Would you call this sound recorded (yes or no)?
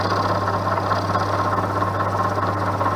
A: yes